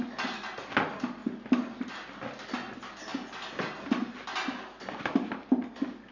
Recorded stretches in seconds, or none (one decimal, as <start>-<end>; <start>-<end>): 0.0-6.1